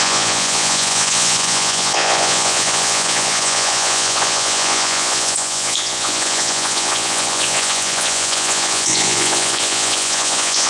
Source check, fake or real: fake